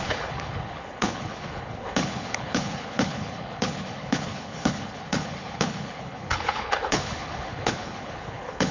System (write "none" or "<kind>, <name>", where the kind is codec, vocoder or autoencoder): codec, HILCodec